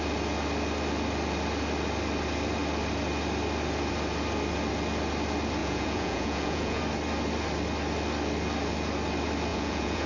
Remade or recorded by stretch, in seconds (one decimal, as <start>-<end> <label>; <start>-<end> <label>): 0.0-5.6 recorded; 5.6-6.8 remade; 6.8-9.5 recorded; 9.5-10.1 remade